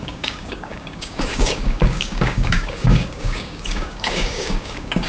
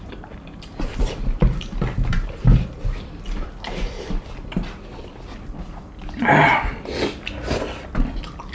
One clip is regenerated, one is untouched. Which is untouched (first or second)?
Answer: second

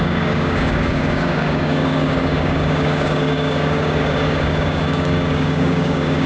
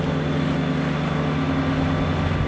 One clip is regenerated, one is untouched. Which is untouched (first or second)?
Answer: second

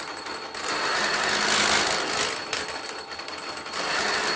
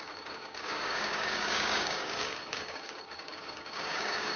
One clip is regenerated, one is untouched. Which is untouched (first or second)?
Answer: first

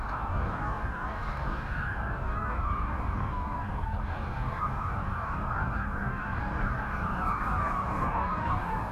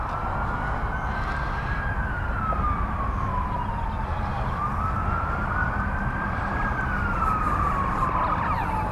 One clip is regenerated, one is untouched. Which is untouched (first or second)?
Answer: second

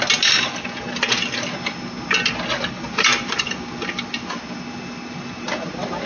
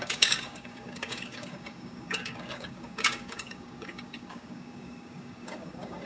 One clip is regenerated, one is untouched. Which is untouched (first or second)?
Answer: first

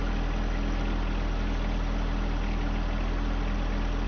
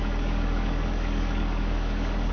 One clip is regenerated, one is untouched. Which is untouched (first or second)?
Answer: first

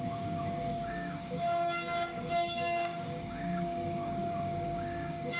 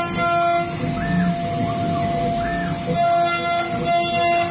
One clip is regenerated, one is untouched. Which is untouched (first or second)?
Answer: second